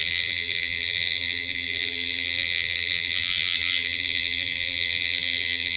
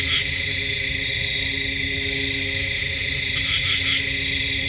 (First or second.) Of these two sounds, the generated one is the first